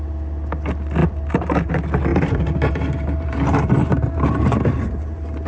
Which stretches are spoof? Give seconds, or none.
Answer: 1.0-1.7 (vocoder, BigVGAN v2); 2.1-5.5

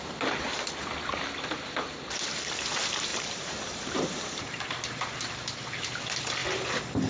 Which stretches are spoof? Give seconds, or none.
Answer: 3.1-6.0 (vocoder, BigVGAN v2)

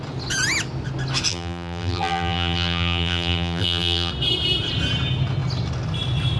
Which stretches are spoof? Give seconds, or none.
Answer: 1.3-4.1 (vocoder, BigVGAN v2)

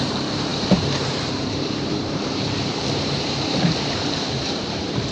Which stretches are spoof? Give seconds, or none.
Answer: 0.0-5.1 (vocoder, BigVGAN v2)

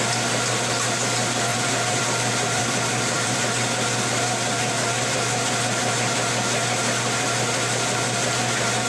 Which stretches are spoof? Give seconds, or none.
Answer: 1.5-3.4 (vocoder, BigVGAN v2)

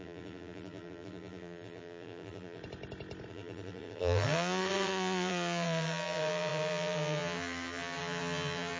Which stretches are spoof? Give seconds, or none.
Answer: 0.0-2.6 (vocoder, BigVGAN v2); 3.3-8.8

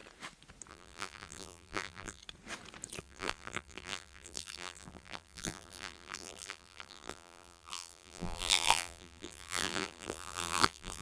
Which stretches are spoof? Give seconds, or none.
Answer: 0.7-2.2 (vocoder, BigVGAN v2); 3.0-11.0

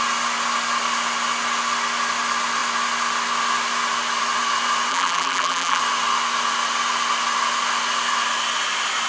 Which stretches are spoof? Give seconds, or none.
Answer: 4.9-5.8 (vocoder, BigVGAN v2)